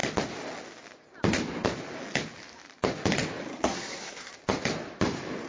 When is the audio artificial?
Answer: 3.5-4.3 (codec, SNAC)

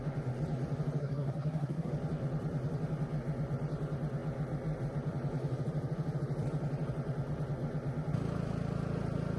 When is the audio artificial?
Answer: 1.0-1.9 (codec, SNAC)

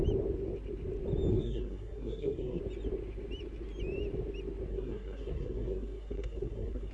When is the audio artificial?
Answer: 1.3-2.6 (codec, SNAC); 4.7-6.9

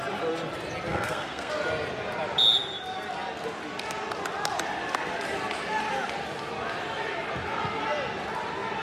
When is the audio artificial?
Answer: 0.9-1.5 (codec, SNAC)

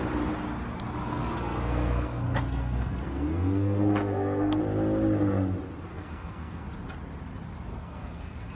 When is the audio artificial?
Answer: 1.1-4.6 (codec, SNAC); 5.9-6.7; 7.7-8.5

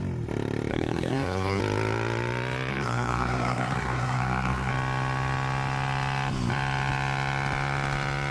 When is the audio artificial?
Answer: 0.7-1.6 (codec, SNAC); 2.7-4.7